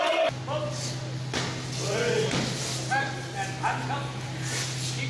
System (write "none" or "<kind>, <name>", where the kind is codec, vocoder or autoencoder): none